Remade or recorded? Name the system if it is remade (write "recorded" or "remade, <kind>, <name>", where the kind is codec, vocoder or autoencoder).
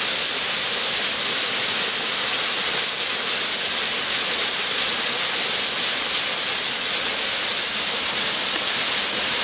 recorded